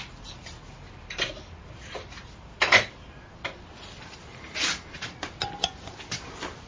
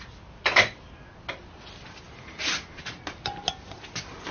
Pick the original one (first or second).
second